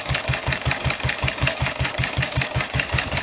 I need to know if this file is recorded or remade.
remade